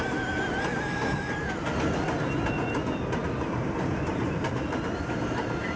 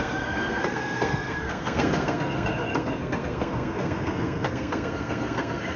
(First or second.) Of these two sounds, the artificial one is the second